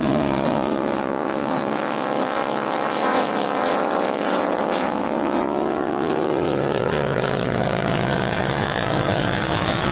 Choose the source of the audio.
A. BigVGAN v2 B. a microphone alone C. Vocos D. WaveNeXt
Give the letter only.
D